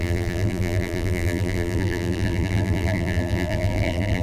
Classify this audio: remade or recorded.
remade